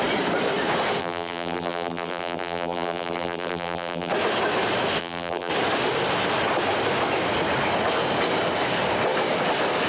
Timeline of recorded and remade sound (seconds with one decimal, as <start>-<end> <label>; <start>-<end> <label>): 0.0-1.0 recorded; 1.0-4.1 remade; 4.1-5.0 recorded; 5.0-5.5 remade; 5.5-9.9 recorded